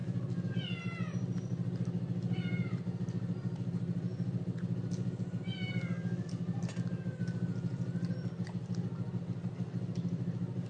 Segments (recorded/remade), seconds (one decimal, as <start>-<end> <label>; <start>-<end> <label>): 0.0-10.7 recorded